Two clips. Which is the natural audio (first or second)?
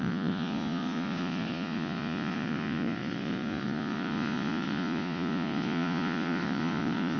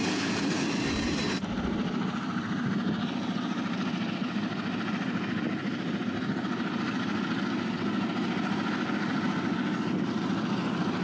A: second